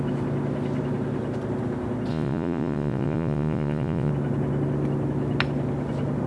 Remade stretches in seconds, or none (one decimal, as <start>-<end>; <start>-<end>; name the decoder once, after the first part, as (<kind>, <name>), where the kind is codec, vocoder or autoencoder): 2.1-4.1 (vocoder, Vocos)